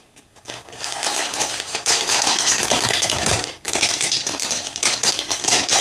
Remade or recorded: remade